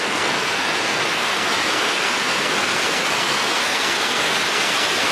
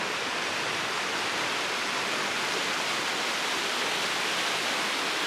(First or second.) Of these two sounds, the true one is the second